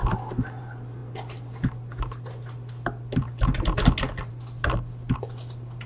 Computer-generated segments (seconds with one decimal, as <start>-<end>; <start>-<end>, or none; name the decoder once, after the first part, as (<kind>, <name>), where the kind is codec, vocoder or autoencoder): none